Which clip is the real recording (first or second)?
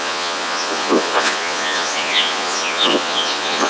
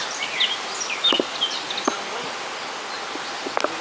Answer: second